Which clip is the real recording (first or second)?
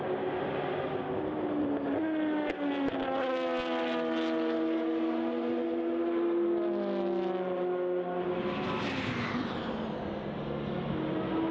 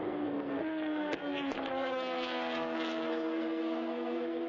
first